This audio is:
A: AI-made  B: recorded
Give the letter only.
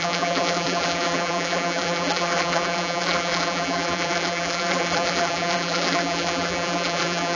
A